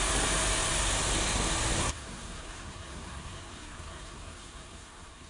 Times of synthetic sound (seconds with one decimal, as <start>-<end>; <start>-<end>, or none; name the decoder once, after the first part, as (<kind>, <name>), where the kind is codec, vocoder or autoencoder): 1.8-5.3 (codec, SNAC)